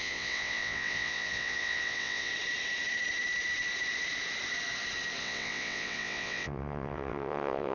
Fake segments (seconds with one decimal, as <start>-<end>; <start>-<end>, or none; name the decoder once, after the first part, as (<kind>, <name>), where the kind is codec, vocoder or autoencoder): 0.0-2.3 (vocoder, WaveNeXt); 5.2-7.7